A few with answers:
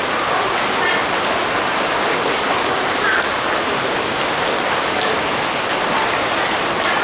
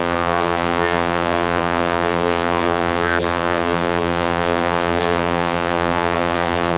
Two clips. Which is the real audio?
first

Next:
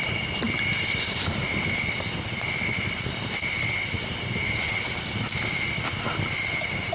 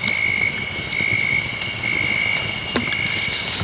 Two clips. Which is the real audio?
second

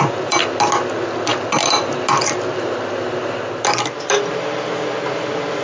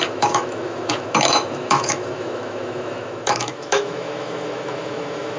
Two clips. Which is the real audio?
first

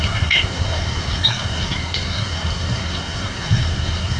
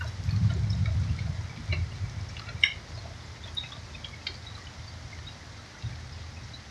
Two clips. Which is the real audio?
second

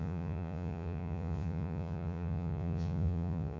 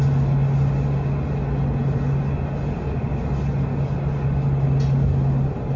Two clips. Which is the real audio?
second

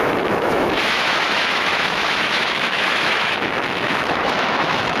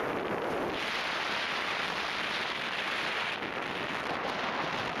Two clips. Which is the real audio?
second